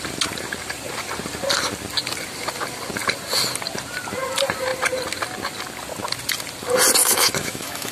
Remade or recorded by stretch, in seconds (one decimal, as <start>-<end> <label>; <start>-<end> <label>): 0.0-7.0 recorded; 7.0-7.9 remade